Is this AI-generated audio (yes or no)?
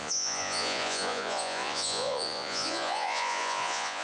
yes